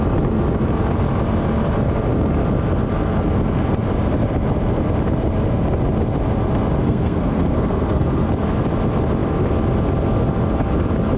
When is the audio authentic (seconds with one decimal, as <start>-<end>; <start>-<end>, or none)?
0.0-6.8; 8.3-11.2

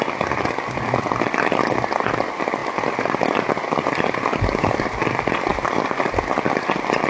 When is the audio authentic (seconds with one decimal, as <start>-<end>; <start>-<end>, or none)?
0.0-7.1

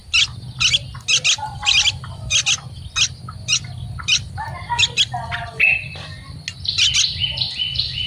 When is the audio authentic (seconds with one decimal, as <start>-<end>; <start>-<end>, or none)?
0.0-8.1

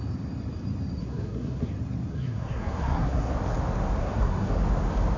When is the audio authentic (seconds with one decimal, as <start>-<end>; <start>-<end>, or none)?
0.0-1.0; 1.7-2.1; 3.3-4.0; 4.6-5.2

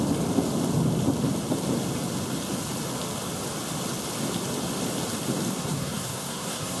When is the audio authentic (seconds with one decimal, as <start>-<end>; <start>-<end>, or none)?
0.0-5.5

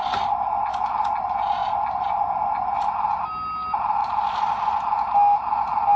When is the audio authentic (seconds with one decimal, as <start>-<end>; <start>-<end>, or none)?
0.0-6.0